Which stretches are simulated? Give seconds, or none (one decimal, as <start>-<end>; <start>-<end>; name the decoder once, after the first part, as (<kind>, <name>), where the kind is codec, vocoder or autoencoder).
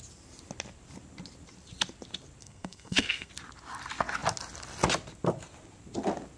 2.4-3.3 (codec, SNAC)